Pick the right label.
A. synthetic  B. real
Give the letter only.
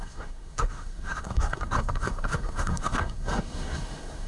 A